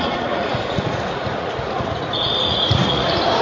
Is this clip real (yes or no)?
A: no